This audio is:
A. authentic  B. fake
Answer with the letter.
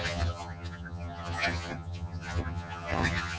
B